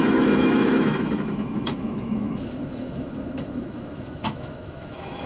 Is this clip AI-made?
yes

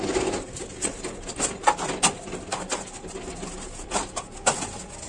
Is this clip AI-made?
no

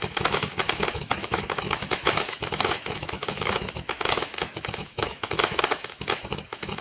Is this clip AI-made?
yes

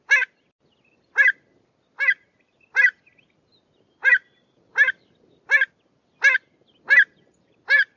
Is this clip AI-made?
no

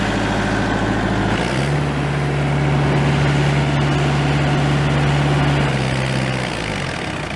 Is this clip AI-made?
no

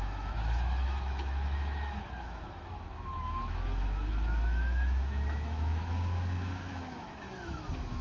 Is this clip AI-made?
yes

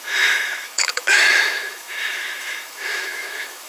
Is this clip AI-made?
yes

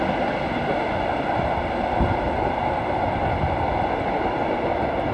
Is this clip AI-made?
no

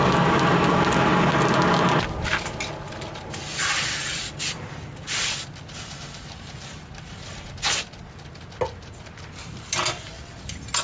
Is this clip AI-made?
no